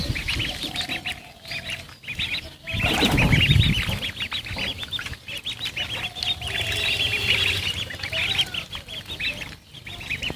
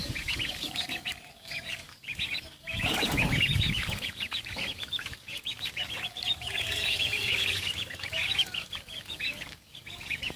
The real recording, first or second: first